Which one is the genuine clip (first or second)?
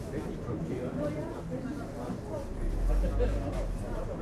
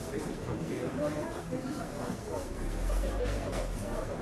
first